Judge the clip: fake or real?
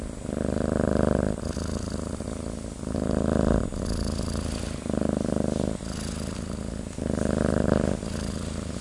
real